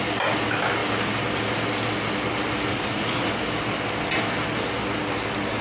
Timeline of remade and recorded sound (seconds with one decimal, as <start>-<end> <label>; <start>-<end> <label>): 0.0-2.7 recorded; 2.7-3.3 remade; 3.3-5.6 recorded